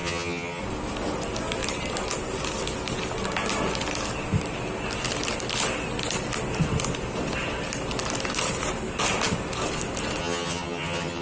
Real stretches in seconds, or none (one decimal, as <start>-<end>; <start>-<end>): 0.6-10.2